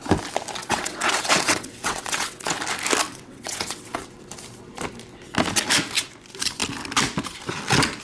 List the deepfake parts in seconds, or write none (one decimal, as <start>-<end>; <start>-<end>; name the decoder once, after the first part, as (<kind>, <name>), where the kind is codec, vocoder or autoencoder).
0.6-2.6 (vocoder, WaveNeXt); 3.1-4.1